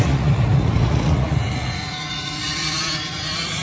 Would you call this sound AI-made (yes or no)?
yes